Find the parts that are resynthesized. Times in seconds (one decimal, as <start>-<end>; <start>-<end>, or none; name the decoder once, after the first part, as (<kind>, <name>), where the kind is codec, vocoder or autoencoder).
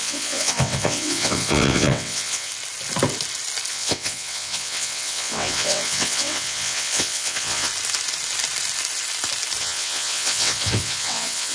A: 0.0-2.5 (vocoder, WaveNeXt); 3.7-7.7; 9.6-11.5